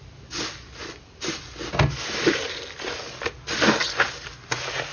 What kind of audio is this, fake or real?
real